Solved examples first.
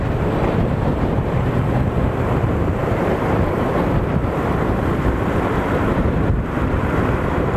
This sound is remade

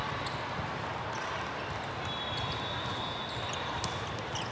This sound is recorded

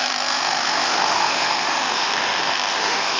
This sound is remade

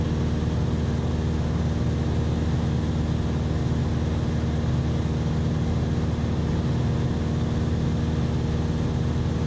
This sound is recorded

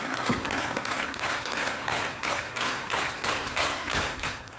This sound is remade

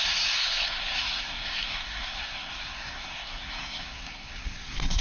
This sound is remade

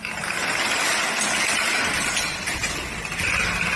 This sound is recorded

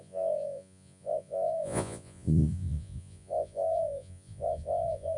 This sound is remade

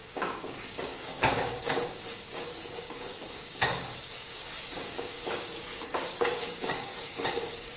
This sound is remade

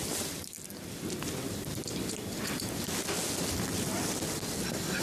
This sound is recorded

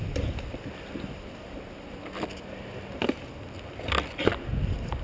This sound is recorded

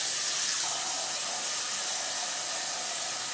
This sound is recorded